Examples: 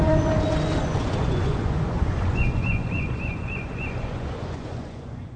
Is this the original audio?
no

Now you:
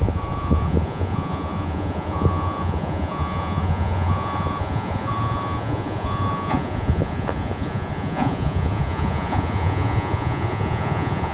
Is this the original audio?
no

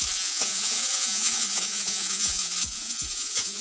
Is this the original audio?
no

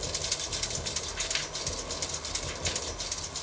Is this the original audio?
yes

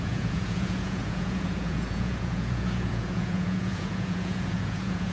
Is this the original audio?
no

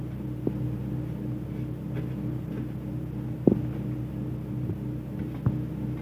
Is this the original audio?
yes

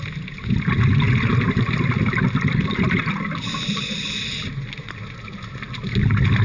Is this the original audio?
yes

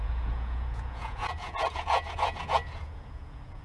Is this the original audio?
no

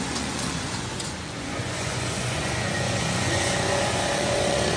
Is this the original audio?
no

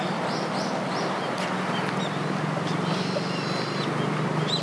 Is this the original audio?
yes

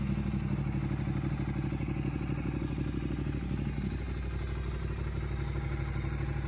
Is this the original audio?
yes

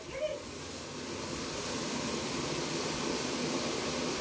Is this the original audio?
yes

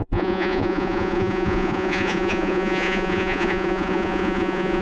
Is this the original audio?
no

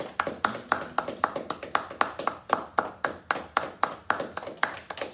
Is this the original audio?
yes